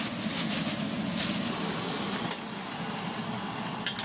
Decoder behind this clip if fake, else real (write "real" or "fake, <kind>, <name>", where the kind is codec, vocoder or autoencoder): real